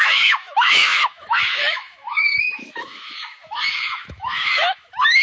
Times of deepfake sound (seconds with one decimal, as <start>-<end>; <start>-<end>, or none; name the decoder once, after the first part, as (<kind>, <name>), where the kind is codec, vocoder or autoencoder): 0.0-5.2 (autoencoder, DAC-VAE)